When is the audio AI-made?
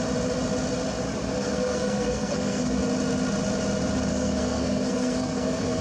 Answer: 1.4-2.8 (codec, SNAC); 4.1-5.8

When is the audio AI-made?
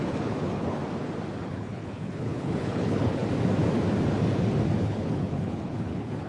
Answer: 0.0-0.8 (codec, HILCodec); 1.4-3.2; 4.8-6.3